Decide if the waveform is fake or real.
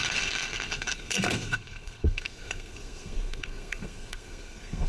fake